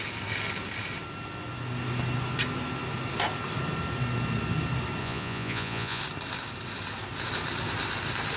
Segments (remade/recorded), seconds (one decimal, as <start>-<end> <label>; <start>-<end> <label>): 0.0-5.0 recorded; 5.0-6.0 remade; 6.0-8.4 recorded